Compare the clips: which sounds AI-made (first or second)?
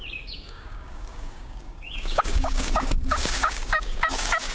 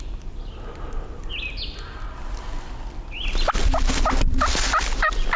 first